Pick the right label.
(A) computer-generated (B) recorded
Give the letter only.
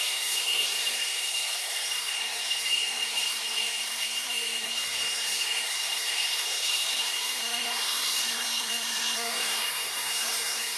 A